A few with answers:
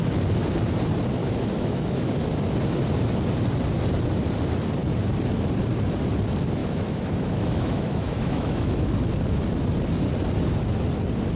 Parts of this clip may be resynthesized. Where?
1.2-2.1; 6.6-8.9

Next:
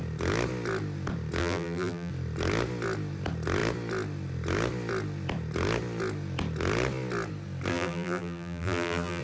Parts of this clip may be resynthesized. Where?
1.4-2.1; 7.7-9.2

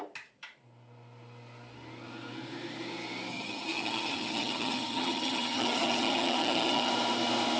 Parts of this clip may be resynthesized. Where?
3.3-6.9

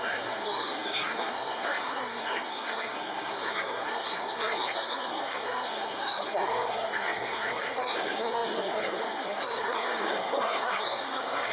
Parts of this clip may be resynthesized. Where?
0.0-11.5